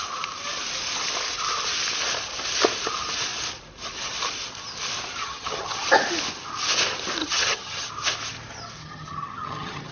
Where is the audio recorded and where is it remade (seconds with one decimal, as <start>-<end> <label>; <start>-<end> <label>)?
0.0-5.2 recorded; 5.2-5.8 remade; 5.8-7.2 recorded; 7.2-7.9 remade; 7.9-8.8 recorded; 8.8-9.9 remade